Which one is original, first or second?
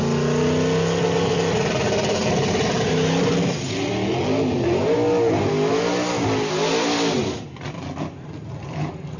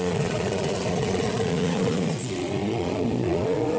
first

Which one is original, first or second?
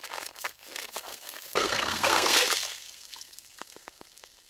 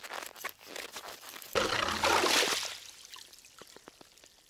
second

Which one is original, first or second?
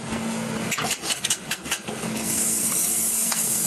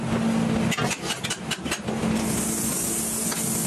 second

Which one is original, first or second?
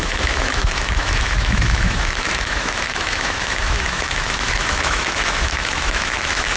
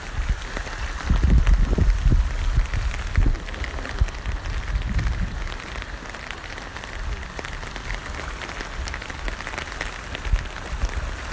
second